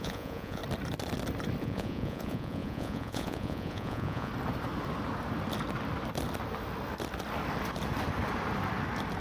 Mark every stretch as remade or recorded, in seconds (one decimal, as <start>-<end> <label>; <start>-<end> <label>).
0.0-0.6 remade; 0.6-1.6 recorded; 1.6-4.3 remade; 4.3-9.2 recorded